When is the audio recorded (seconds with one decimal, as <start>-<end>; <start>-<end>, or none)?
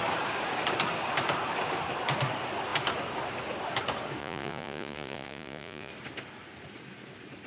0.0-4.2; 5.9-7.5